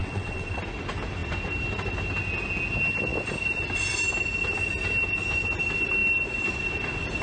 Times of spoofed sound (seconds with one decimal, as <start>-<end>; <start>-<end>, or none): 0.0-0.6